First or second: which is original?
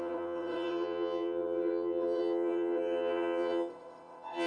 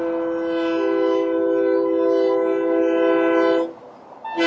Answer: second